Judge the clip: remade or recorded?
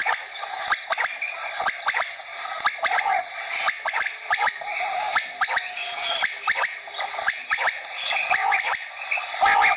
recorded